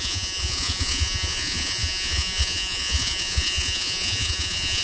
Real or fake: fake